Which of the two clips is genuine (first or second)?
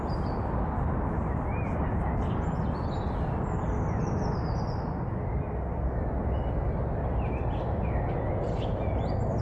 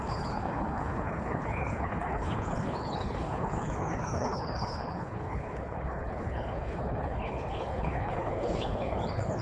first